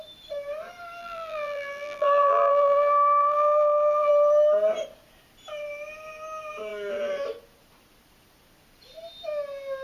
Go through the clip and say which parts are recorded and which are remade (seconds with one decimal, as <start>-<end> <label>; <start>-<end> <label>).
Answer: 0.0-1.0 recorded; 1.0-4.1 remade; 4.1-9.8 recorded